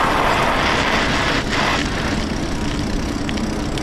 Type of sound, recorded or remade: recorded